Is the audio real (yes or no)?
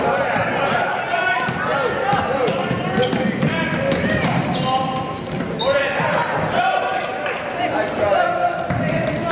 yes